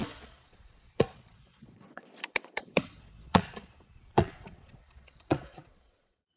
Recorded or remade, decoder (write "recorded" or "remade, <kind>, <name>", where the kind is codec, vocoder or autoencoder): remade, vocoder, Vocos